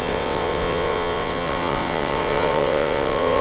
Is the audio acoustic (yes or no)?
no